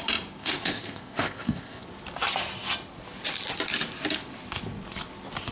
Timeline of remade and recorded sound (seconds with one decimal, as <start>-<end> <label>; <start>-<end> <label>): 0.0-0.4 recorded; 0.4-1.8 remade; 1.8-5.5 recorded